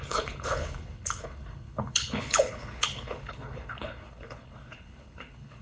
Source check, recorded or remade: remade